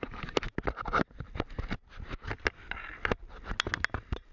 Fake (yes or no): no